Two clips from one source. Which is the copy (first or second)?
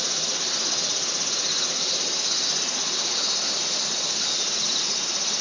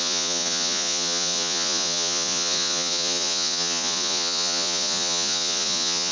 second